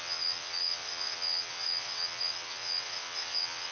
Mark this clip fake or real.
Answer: fake